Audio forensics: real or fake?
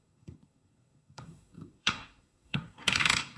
fake